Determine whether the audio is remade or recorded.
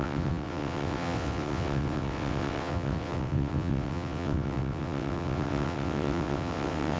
remade